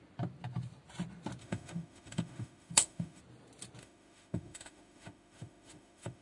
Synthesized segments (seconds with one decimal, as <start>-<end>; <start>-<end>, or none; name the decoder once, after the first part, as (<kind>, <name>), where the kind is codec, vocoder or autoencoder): 1.4-3.2 (autoencoder, DAC-VAE); 3.8-6.2